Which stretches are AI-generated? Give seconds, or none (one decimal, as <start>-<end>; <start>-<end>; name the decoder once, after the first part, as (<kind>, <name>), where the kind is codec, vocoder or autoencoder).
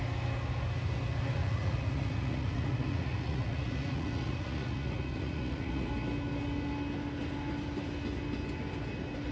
1.4-5.9 (vocoder, Vocos)